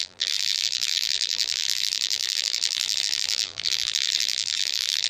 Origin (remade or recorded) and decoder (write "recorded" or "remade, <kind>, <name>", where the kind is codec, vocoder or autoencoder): remade, vocoder, BigVGAN v2